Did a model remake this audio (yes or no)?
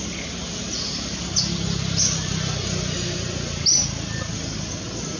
no